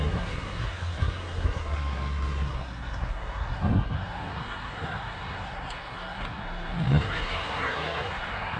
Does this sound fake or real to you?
fake